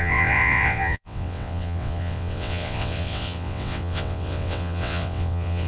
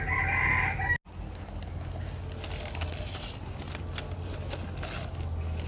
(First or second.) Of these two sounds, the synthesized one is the first